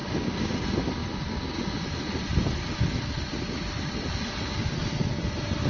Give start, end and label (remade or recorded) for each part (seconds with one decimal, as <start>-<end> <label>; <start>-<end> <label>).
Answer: 0.0-0.5 remade; 0.5-5.7 recorded